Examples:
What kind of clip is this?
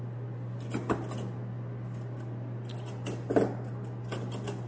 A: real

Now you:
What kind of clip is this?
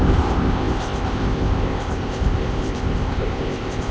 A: fake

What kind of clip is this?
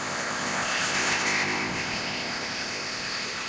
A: fake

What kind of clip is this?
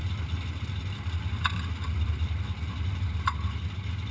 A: real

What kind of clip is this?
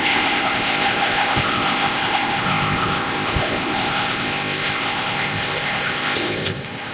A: fake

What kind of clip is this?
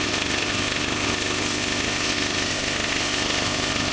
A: fake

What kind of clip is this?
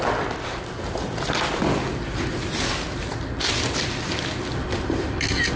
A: real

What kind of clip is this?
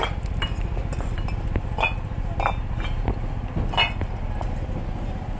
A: real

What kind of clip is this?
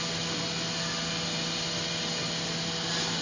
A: real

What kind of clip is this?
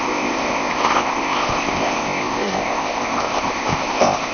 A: fake